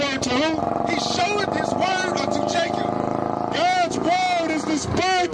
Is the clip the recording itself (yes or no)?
yes